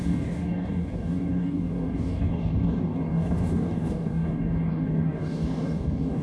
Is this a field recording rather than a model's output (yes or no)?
no